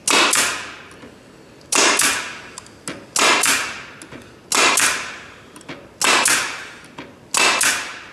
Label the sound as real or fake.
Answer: real